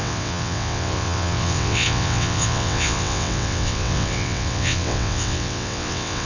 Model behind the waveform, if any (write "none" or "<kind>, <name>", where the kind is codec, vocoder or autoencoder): vocoder, WaveNeXt